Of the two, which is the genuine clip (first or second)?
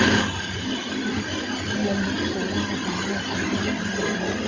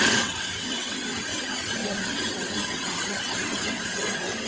first